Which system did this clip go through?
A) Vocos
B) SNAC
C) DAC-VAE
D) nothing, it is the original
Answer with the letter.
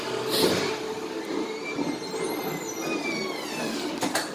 D